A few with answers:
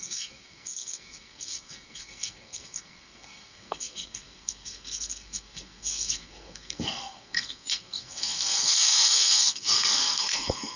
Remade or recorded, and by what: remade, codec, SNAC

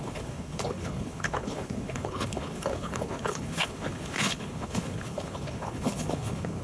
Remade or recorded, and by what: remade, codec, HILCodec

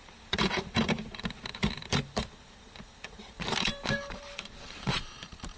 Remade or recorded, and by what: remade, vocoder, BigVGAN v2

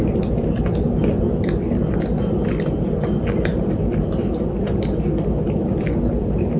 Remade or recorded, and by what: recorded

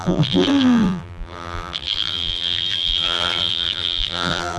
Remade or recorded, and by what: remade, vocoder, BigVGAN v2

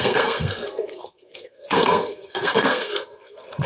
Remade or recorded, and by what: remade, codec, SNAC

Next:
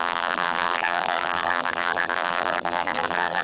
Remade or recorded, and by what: remade, vocoder, BigVGAN v2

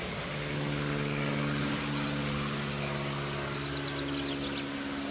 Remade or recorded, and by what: recorded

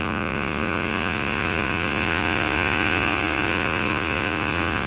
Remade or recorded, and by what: remade, vocoder, Vocos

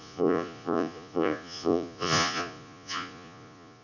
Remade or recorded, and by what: remade, vocoder, Vocos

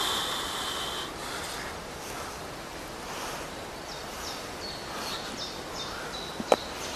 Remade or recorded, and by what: recorded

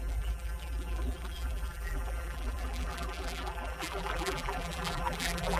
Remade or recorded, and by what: remade, vocoder, BigVGAN v2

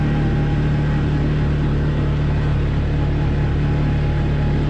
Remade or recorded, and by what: recorded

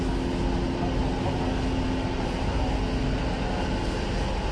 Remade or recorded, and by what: recorded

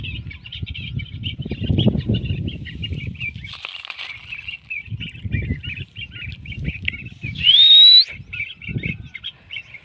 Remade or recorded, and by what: recorded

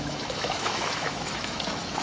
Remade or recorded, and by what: remade, autoencoder, DAC-VAE